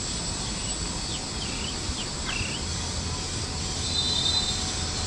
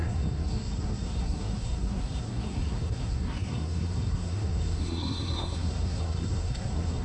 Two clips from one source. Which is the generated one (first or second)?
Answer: second